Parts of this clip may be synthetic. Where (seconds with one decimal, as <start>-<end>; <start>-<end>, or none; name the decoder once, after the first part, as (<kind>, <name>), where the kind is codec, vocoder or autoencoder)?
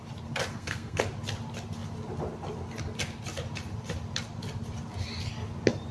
0.5-1.0 (codec, SNAC)